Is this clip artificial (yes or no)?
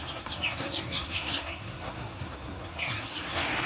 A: yes